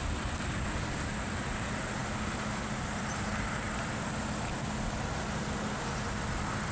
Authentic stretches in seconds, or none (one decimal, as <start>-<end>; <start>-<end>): 0.0-6.7